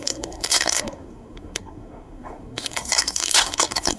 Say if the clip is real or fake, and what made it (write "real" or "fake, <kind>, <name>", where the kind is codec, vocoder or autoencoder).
fake, codec, SNAC